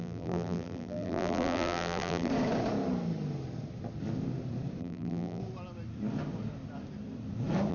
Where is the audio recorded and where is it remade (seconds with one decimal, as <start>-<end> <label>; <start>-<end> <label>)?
0.0-2.3 remade; 2.3-4.8 recorded; 4.8-5.4 remade; 5.4-7.7 recorded